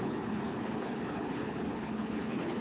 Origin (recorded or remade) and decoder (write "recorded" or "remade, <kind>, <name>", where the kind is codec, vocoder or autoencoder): remade, codec, HILCodec